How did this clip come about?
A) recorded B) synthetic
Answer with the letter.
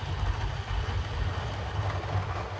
A